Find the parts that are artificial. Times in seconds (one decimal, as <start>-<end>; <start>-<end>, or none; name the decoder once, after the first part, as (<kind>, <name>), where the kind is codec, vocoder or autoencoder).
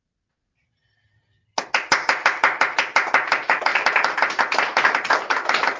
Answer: none